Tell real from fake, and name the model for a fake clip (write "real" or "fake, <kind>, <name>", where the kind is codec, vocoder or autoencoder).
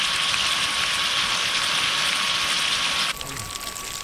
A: real